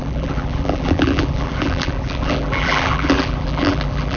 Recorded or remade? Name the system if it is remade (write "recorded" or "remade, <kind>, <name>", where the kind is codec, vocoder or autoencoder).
remade, vocoder, BigVGAN v2